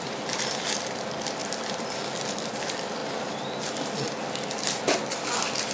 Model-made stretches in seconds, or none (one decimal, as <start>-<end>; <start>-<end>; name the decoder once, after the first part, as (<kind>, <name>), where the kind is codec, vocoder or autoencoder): none